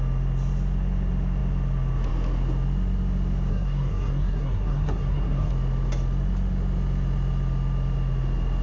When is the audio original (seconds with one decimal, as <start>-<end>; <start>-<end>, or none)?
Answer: 0.0-3.5; 5.5-8.6

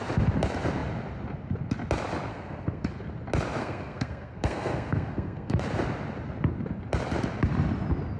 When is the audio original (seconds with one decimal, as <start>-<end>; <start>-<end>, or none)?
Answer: 0.0-2.3; 2.9-3.6; 5.6-8.2